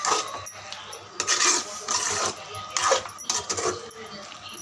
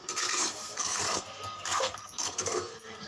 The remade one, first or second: second